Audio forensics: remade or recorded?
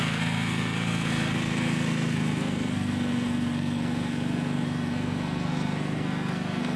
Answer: remade